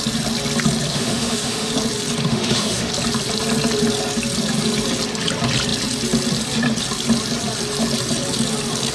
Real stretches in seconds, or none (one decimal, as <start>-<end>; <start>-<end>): 0.0-0.9; 1.7-2.3; 2.9-8.9